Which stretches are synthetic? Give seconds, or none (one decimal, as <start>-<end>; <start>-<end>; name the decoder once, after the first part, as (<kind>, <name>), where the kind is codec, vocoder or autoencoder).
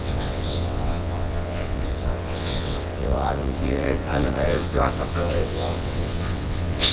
0.0-6.9 (vocoder, WaveNeXt)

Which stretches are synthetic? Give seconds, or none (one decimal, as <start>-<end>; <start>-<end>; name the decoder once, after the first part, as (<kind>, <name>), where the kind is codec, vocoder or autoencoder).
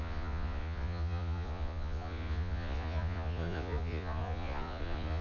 0.0-5.2 (vocoder, Vocos)